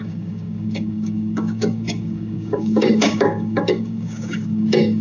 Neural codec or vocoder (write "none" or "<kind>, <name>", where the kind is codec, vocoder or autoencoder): codec, DAC